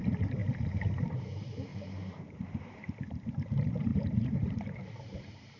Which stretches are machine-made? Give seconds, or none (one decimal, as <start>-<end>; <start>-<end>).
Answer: 0.0-0.4; 1.1-5.6